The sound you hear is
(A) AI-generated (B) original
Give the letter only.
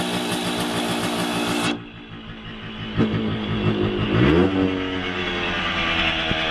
B